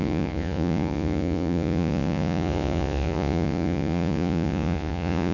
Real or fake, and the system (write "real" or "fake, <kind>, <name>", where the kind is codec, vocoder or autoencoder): fake, vocoder, Vocos